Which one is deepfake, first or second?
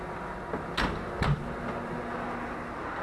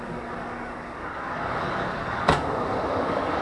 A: second